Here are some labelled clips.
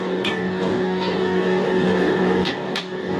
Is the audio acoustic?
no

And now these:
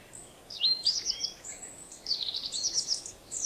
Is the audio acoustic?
no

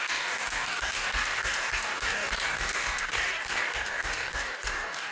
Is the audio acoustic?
no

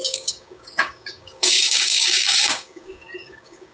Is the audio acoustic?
no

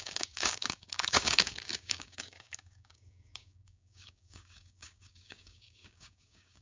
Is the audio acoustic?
no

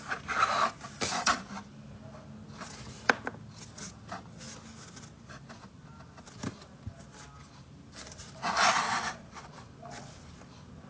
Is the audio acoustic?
yes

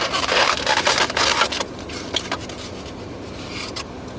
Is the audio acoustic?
yes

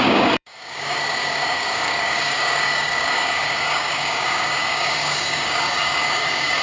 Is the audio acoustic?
no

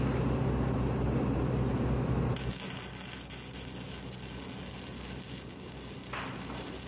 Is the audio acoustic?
yes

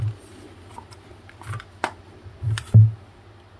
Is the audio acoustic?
yes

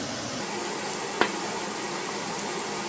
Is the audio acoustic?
yes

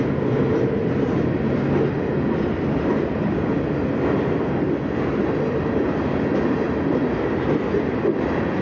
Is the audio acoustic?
yes